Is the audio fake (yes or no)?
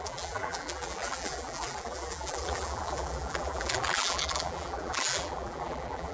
yes